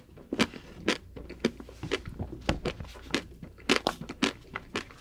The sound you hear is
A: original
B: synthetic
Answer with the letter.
A